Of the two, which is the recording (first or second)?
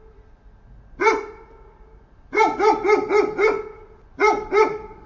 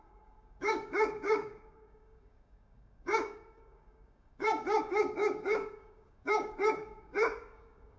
first